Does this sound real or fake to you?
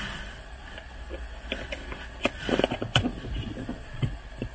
real